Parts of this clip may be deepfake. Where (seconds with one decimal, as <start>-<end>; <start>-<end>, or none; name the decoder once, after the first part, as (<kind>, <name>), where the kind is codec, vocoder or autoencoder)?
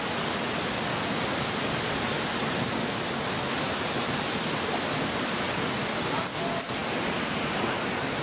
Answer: none